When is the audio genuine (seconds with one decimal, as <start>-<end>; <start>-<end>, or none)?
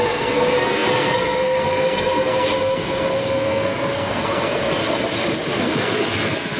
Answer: 4.8-5.6